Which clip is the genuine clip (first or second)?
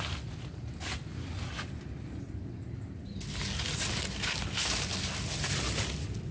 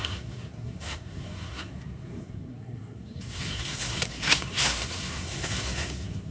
first